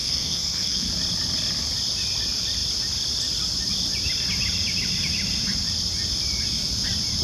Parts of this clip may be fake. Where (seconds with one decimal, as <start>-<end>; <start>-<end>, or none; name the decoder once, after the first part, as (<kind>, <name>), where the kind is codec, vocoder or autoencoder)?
0.0-0.9 (codec, SNAC)